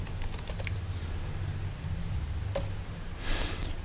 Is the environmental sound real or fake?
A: real